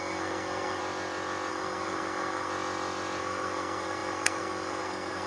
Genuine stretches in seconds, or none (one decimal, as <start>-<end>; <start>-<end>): 0.8-1.5; 2.5-3.2